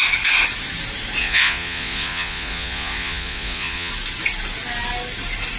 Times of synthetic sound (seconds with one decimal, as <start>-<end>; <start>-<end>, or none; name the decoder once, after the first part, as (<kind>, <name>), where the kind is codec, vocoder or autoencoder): 1.2-3.9 (vocoder, Vocos)